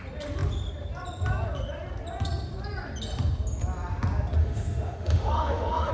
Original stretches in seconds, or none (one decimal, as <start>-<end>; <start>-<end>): 0.0-4.4